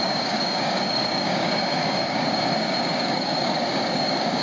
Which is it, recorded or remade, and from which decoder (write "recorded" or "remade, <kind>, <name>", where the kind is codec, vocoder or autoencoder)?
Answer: remade, codec, DAC